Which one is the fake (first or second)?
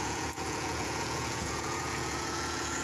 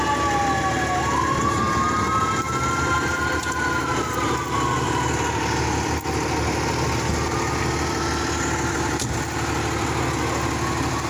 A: first